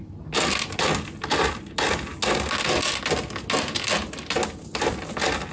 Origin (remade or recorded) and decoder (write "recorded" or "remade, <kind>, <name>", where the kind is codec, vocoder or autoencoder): recorded